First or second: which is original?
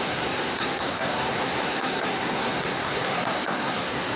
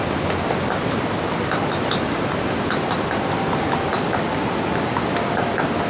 second